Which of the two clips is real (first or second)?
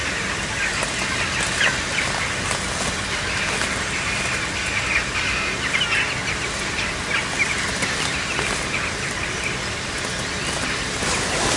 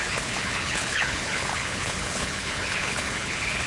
first